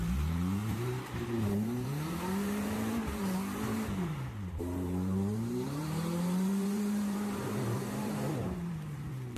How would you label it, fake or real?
fake